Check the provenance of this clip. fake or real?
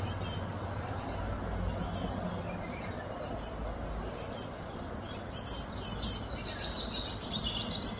real